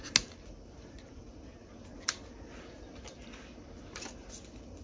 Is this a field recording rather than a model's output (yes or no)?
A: yes